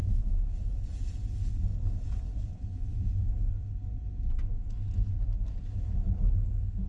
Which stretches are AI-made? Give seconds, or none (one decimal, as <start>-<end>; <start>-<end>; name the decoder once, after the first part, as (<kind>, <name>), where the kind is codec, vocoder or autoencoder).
0.0-1.2 (vocoder, Vocos); 1.7-3.3